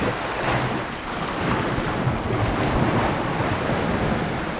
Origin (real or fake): real